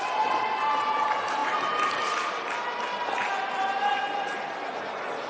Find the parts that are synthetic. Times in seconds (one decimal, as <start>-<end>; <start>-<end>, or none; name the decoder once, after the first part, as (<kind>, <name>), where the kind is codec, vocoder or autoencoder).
none